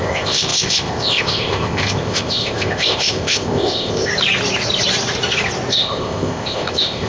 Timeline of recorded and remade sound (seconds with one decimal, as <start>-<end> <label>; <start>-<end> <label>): 0.0-4.1 remade; 4.1-5.7 recorded; 5.7-7.1 remade